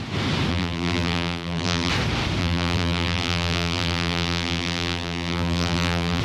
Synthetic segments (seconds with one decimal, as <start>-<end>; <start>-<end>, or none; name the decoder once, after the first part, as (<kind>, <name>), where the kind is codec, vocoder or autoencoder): 0.5-1.9 (vocoder, BigVGAN v2); 2.4-6.2